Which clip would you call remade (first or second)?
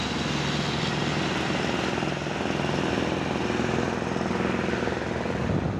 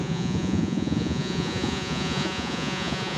second